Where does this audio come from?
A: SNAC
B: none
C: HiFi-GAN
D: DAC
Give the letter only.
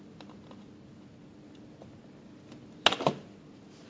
B